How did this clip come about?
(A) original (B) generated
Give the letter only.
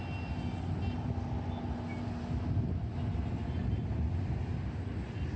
A